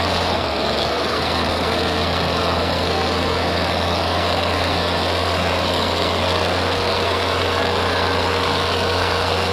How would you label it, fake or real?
fake